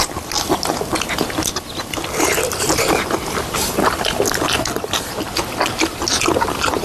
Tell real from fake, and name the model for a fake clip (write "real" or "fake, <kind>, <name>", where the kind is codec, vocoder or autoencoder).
real